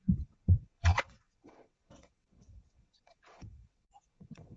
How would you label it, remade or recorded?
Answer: remade